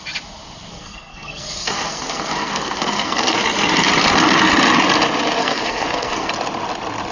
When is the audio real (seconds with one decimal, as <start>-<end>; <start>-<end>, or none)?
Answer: 0.0-0.7; 3.4-5.4; 6.3-7.1